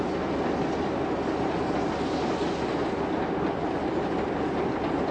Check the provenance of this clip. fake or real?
real